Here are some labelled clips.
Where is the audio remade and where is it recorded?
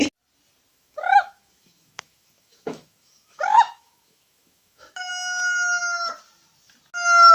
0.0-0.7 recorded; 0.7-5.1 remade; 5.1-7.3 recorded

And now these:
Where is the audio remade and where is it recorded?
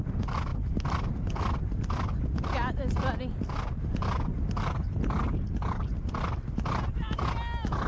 0.0-7.9 recorded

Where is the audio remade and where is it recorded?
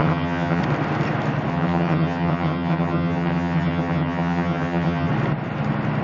0.0-0.6 remade; 0.6-1.5 recorded; 1.5-5.1 remade; 5.1-6.0 recorded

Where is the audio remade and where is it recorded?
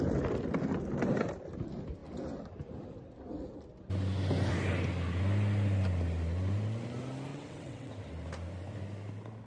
0.0-7.3 recorded; 7.3-7.9 remade; 7.9-9.5 recorded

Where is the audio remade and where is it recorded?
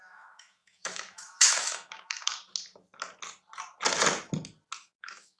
0.0-2.3 remade; 2.3-4.8 recorded; 4.8-5.4 remade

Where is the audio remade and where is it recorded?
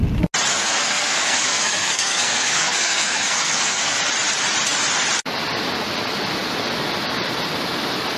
0.0-0.5 recorded; 0.5-4.0 remade; 4.0-8.2 recorded